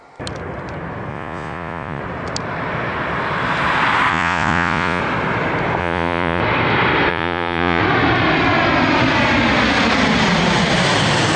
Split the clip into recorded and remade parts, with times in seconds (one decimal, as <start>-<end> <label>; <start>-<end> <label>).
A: 0.0-1.1 recorded; 1.1-2.0 remade; 2.0-4.1 recorded; 4.1-5.0 remade; 5.0-5.8 recorded; 5.8-6.4 remade; 6.4-7.1 recorded; 7.1-7.8 remade; 7.8-11.4 recorded